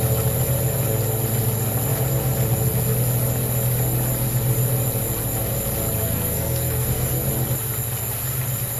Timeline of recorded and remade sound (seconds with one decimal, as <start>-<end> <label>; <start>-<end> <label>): 0.0-6.0 recorded; 6.0-7.3 remade; 7.3-8.8 recorded